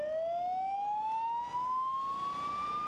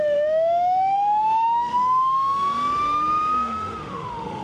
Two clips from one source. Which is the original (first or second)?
first